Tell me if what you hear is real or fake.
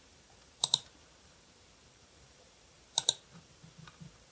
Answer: fake